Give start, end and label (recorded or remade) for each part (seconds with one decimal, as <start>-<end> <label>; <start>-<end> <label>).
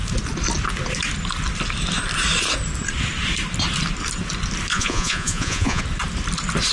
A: 0.0-4.7 recorded; 4.7-5.8 remade; 5.8-6.7 recorded